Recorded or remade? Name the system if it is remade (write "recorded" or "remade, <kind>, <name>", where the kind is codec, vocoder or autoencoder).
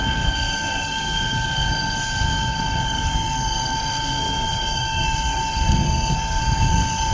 remade, codec, SNAC